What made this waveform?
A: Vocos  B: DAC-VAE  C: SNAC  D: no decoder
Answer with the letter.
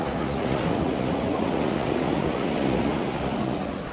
A